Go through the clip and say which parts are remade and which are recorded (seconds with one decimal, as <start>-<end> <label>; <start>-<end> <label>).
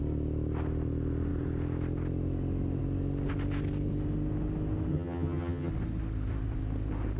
0.0-4.9 recorded; 4.9-5.7 remade; 5.7-7.2 recorded